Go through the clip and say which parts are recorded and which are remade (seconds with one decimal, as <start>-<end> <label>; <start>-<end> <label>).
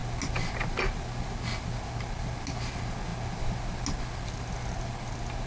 0.0-5.5 recorded